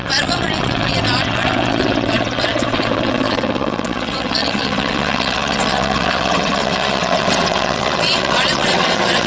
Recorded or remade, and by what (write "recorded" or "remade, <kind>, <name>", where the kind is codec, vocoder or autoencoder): remade, vocoder, WaveNeXt